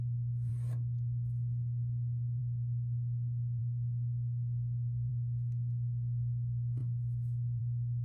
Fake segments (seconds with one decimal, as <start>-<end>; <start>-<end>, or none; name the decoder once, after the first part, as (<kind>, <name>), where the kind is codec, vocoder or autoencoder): 0.0-0.5 (autoencoder, DAC-VAE); 2.4-8.0